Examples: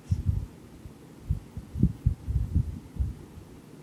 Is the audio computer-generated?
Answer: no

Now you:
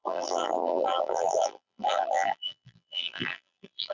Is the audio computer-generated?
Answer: yes